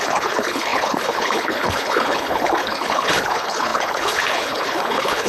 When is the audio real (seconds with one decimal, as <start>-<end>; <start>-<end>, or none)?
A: none

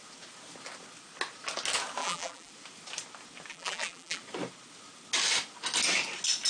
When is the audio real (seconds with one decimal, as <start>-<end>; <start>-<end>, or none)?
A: 0.0-2.0; 2.5-3.5; 4.2-6.5

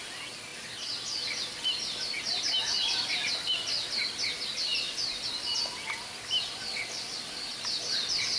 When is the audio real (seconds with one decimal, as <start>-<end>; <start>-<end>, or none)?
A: 0.0-8.4

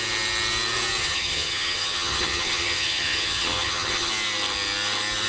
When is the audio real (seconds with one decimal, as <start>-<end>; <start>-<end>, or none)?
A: 0.0-1.0; 4.1-5.3